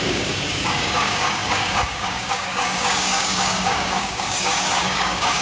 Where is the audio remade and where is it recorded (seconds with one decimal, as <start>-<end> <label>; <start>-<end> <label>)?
0.0-5.4 remade